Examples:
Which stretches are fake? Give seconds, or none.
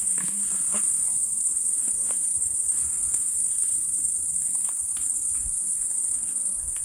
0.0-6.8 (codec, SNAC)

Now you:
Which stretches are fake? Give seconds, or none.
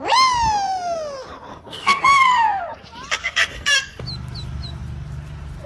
1.5-2.6 (codec, SNAC); 3.2-4.0